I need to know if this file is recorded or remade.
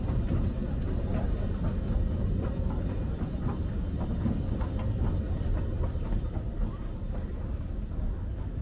recorded